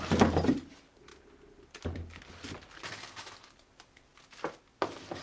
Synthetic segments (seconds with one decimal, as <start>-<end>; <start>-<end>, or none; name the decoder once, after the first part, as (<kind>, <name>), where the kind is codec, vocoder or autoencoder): none